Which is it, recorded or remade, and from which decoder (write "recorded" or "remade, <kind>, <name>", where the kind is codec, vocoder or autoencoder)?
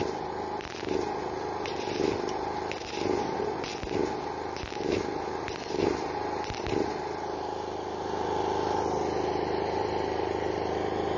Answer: recorded